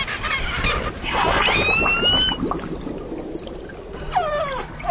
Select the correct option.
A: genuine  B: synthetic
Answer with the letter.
A